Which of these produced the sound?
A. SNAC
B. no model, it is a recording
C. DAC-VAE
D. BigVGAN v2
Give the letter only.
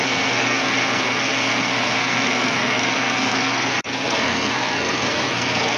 A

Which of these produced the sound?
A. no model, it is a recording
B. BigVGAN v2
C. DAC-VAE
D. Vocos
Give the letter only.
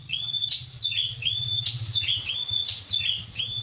D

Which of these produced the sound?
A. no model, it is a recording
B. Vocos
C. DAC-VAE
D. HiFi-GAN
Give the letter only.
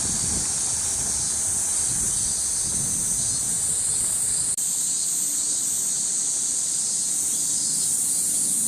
A